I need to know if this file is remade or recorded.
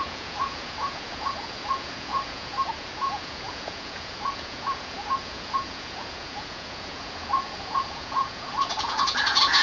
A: remade